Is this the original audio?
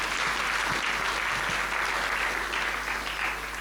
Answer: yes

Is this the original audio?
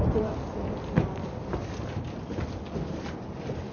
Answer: yes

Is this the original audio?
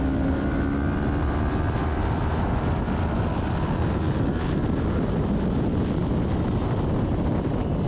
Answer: yes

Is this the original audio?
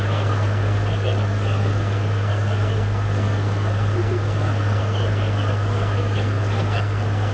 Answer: no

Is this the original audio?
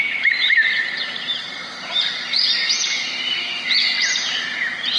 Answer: no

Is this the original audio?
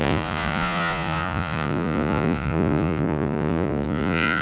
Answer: no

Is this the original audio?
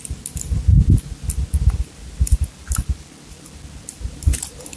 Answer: yes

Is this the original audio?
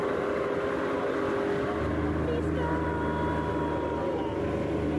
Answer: yes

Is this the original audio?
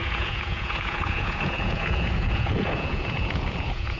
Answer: no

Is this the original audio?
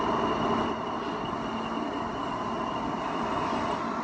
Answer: yes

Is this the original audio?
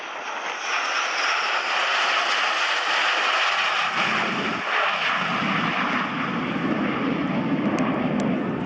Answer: yes